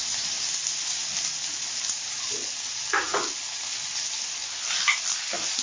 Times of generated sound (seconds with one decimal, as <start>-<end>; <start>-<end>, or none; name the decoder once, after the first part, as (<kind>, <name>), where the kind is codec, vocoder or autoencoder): 1.3-2.2 (vocoder, BigVGAN v2)